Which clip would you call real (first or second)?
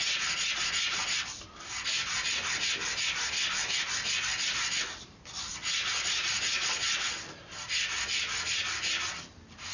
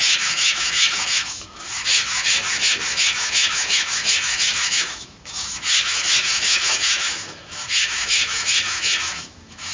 first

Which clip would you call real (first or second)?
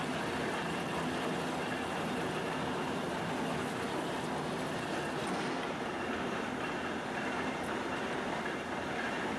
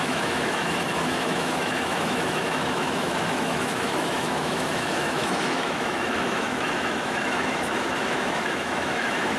first